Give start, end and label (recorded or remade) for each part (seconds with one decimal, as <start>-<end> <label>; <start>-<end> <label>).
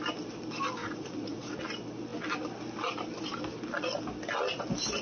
0.0-0.8 recorded; 0.8-1.6 remade; 1.6-5.0 recorded